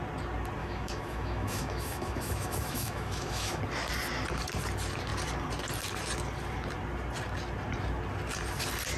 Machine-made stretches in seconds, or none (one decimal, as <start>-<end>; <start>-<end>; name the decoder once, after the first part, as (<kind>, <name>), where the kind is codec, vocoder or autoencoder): 0.6-3.6 (autoencoder, DAC-VAE)